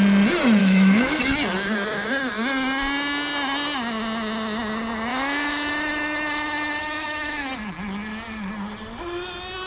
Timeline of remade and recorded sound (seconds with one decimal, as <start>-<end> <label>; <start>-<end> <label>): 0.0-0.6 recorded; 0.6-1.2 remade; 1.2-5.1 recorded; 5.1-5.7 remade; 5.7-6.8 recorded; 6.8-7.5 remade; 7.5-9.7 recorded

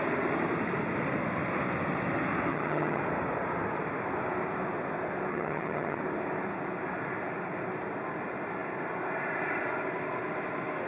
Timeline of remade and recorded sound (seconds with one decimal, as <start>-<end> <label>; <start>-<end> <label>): 0.0-2.5 recorded; 2.5-3.0 remade; 3.0-5.3 recorded; 5.3-6.0 remade; 6.0-10.9 recorded

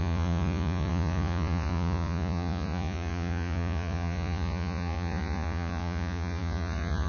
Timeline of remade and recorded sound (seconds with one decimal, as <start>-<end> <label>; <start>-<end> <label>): 0.0-7.1 remade

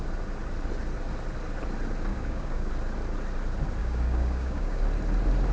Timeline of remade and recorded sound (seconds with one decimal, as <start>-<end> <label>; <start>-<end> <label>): 0.0-2.1 recorded; 2.1-2.7 remade; 2.7-3.8 recorded; 3.8-4.8 remade; 4.8-5.5 recorded

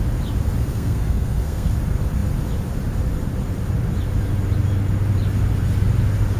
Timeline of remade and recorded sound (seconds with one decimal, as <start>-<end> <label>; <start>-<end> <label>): 0.0-0.7 recorded; 0.7-1.7 remade; 1.7-6.4 recorded